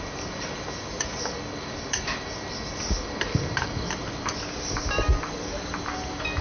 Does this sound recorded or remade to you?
recorded